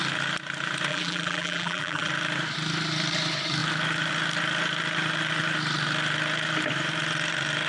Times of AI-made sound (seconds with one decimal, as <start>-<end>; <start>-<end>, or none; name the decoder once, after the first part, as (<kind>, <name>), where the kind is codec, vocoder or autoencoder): 0.9-2.1 (vocoder, BigVGAN v2)